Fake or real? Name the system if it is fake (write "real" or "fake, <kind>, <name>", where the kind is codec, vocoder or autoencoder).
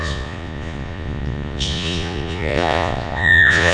fake, vocoder, Vocos